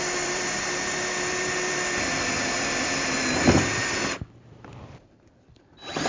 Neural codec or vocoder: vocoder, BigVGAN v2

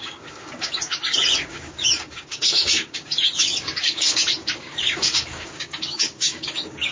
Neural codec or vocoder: codec, DAC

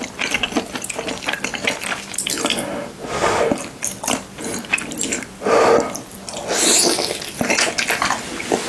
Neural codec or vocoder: none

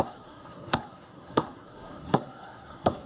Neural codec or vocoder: codec, SNAC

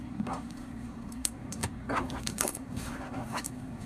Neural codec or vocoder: codec, SNAC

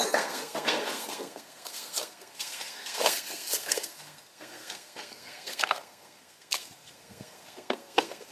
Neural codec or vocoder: codec, SNAC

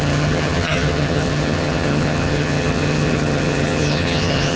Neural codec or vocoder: vocoder, HiFi-GAN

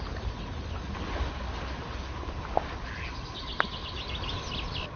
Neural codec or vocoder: none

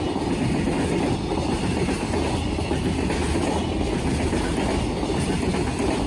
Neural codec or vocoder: none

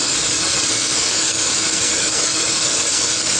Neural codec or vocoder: codec, SNAC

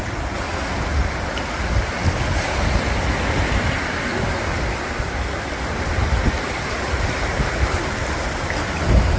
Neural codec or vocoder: none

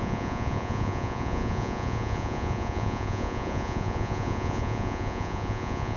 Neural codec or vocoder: vocoder, Vocos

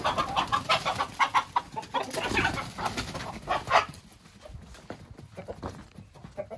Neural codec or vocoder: none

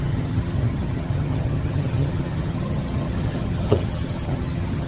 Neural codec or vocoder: vocoder, HiFi-GAN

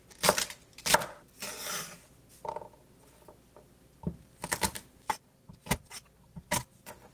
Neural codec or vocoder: none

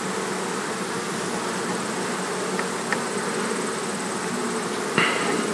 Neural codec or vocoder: none